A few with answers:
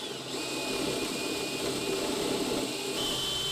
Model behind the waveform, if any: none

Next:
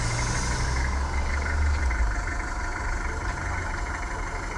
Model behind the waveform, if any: none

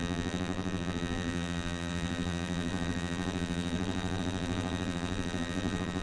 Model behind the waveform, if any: vocoder, BigVGAN v2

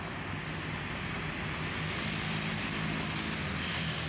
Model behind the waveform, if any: none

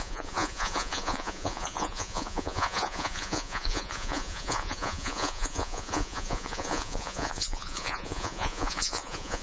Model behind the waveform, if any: vocoder, Vocos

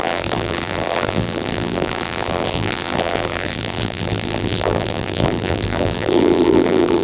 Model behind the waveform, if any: vocoder, BigVGAN v2